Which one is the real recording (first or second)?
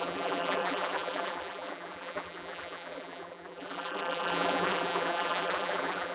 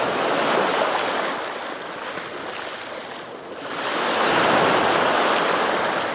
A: second